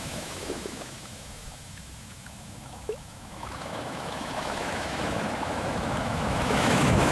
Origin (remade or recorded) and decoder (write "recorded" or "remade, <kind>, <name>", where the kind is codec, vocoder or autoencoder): remade, autoencoder, DAC-VAE